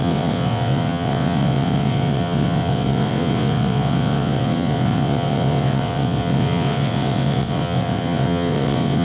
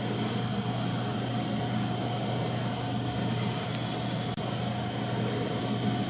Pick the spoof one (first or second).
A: first